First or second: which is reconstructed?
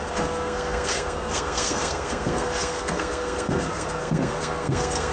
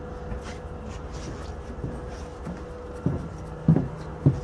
first